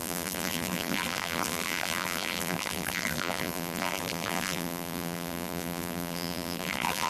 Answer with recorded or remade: remade